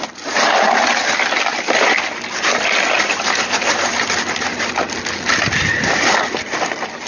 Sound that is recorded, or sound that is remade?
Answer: recorded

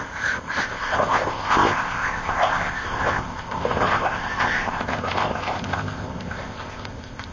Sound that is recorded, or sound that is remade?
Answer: remade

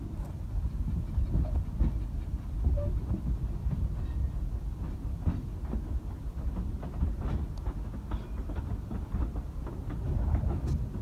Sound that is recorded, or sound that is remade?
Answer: recorded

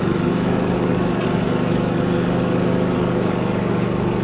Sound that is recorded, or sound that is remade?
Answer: remade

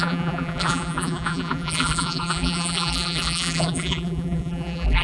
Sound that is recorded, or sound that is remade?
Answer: remade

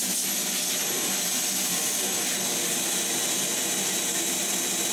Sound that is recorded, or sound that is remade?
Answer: recorded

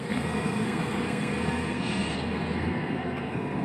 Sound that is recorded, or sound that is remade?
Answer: remade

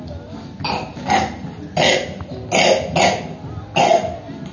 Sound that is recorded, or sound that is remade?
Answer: recorded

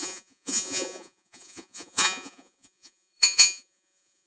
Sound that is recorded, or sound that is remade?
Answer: remade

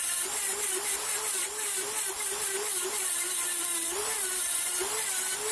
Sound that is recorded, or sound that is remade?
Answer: recorded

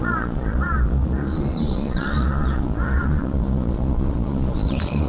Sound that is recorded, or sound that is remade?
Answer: remade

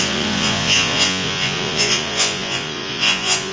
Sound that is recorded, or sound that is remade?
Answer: remade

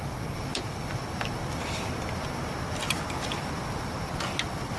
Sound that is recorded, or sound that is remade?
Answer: recorded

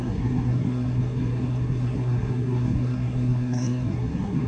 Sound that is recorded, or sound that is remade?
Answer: remade